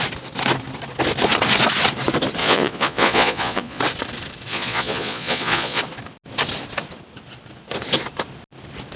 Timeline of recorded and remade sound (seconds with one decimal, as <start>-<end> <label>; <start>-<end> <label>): 0.0-2.4 recorded; 2.4-3.8 remade; 3.8-4.5 recorded; 4.5-5.8 remade; 5.8-9.0 recorded

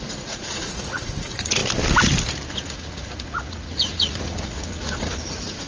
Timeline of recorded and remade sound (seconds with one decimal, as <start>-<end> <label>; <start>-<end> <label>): 0.0-1.6 remade; 1.6-2.5 recorded; 2.5-5.7 remade

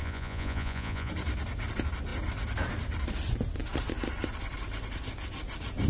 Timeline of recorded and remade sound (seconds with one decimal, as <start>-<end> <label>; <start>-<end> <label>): 0.0-1.1 remade; 1.1-5.9 recorded

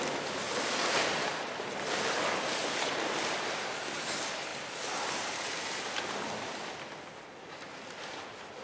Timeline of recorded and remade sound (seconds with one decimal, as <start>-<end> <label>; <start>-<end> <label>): 0.0-8.6 recorded

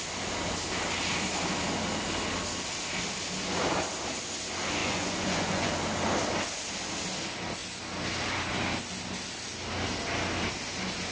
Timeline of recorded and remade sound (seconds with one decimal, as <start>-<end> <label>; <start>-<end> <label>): 0.0-4.8 recorded; 4.8-5.7 remade; 5.7-11.1 recorded